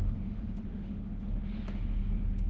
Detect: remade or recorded remade